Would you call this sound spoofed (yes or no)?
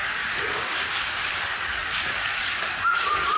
yes